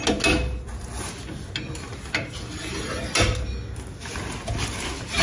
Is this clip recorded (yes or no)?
yes